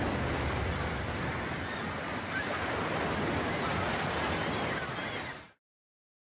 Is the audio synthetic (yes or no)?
no